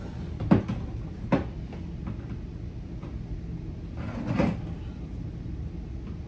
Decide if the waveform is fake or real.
real